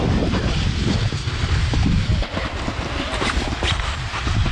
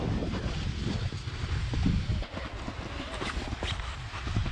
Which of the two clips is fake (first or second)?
first